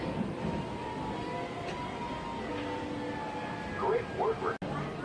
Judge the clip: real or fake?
real